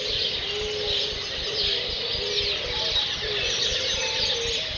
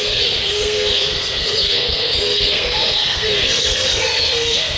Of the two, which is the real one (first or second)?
first